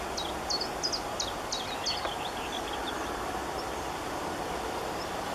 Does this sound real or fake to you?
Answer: real